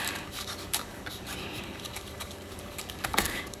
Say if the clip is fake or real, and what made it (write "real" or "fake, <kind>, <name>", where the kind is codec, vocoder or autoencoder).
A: fake, codec, DAC